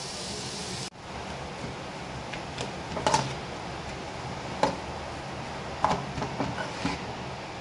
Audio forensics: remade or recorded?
recorded